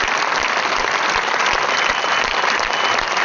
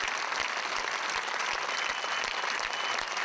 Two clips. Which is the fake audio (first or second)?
first